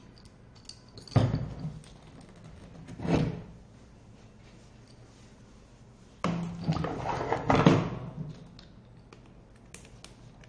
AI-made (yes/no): no